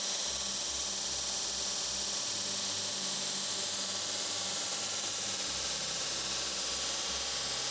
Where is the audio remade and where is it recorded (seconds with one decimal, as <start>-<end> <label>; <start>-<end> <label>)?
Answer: 0.0-2.9 recorded; 2.9-6.1 remade; 6.1-7.7 recorded